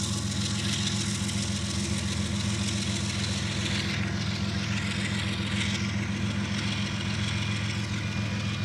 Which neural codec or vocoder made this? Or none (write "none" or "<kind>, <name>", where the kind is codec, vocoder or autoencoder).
none